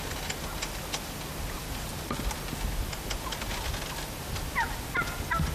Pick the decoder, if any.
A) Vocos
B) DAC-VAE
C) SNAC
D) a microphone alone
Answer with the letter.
D